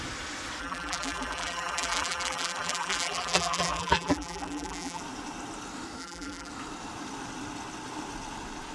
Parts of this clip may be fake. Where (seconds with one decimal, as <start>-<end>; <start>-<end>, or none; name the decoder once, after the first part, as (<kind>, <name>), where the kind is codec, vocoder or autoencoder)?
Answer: 0.6-5.0 (vocoder, BigVGAN v2); 6.0-6.5